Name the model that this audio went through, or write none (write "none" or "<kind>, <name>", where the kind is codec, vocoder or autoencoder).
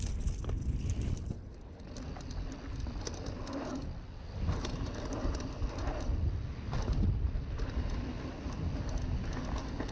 none